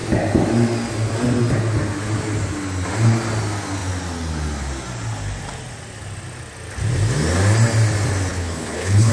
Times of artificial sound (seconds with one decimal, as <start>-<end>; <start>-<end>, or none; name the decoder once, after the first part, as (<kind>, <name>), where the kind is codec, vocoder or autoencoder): 8.3-9.1 (codec, HILCodec)